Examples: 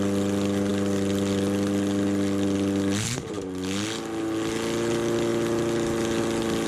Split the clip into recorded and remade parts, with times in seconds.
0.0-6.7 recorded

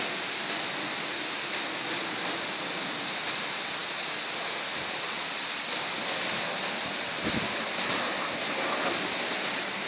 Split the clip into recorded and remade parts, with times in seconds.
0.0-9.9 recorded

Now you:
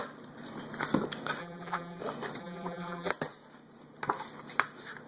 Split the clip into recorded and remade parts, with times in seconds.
0.0-1.4 recorded; 1.4-2.0 remade; 2.0-2.4 recorded; 2.4-3.1 remade; 3.1-5.1 recorded

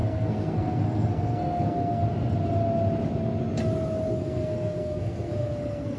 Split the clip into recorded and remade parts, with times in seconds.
0.0-2.0 remade; 2.0-4.1 recorded; 4.1-6.0 remade

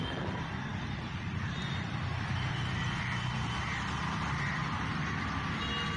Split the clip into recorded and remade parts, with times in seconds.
0.0-0.7 recorded; 0.7-3.7 remade; 3.7-4.6 recorded; 4.6-5.5 remade; 5.5-6.0 recorded